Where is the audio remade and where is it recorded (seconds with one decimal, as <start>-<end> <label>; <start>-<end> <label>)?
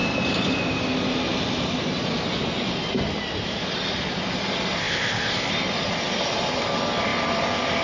0.0-4.8 recorded; 4.8-5.5 remade; 5.5-7.8 recorded